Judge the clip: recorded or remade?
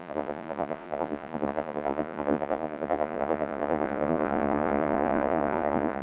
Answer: remade